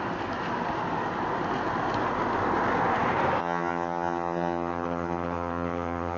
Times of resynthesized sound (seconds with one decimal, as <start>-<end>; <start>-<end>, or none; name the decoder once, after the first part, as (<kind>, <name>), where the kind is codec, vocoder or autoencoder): 3.4-6.2 (vocoder, HiFi-GAN)